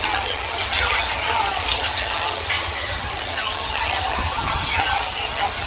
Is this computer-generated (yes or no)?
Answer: yes